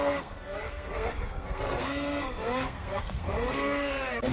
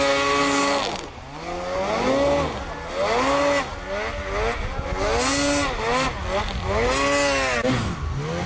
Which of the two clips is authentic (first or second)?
second